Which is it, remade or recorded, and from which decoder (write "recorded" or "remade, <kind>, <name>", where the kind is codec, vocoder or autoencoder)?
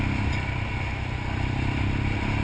recorded